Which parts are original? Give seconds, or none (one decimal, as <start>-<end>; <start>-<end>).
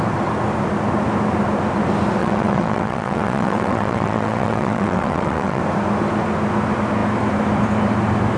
0.0-2.2; 5.6-8.4